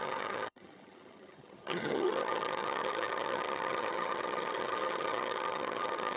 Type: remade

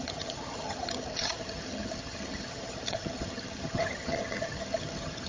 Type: remade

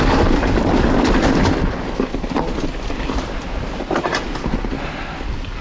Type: recorded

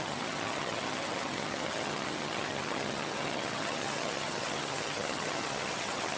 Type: remade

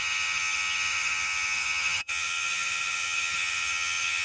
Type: remade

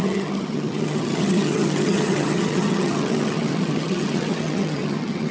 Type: remade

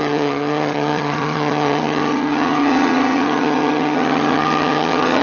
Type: remade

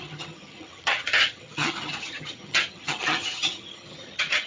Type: remade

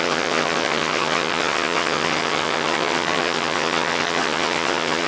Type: remade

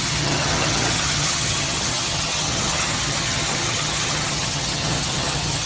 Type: remade